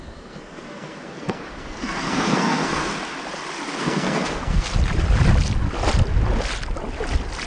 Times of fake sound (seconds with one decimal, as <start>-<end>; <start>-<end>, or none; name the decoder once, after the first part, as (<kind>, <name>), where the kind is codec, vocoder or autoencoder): 0.0-2.9 (codec, SNAC); 3.8-4.7